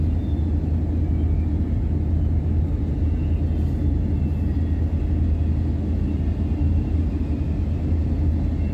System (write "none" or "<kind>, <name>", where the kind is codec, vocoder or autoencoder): none